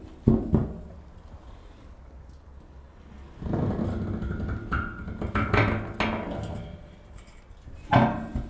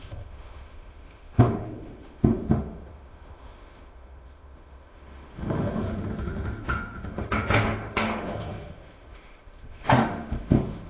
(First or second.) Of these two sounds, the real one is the first